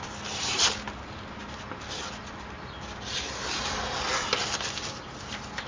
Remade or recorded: recorded